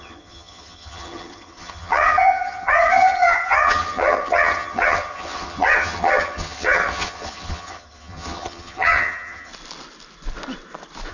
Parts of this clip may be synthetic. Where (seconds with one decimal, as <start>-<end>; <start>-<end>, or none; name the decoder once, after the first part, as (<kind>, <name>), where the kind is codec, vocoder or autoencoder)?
0.0-9.5 (vocoder, HiFi-GAN)